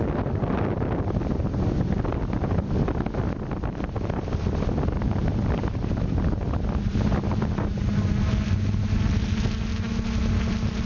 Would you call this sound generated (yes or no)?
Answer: no